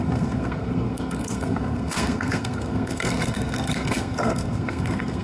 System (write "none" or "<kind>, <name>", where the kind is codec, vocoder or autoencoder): codec, SNAC